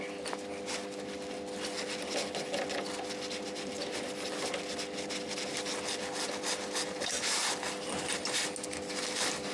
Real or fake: real